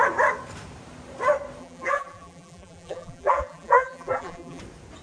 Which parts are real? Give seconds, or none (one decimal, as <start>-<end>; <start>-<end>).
0.0-1.6; 4.6-5.0